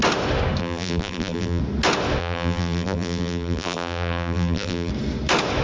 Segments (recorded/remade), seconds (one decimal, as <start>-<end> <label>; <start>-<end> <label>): 0.0-0.6 recorded; 0.6-1.6 remade; 1.6-2.2 recorded; 2.2-4.9 remade; 4.9-5.6 recorded